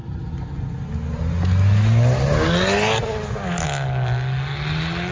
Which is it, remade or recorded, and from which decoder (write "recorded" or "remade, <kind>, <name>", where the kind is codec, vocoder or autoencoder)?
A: recorded